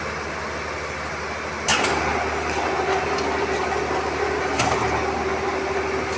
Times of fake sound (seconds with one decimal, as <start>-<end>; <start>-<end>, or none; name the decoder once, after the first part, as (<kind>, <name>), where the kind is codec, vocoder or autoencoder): none